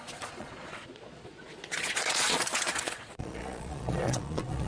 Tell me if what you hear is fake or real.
fake